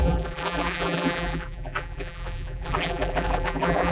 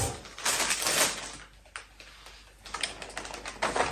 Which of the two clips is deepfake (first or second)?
first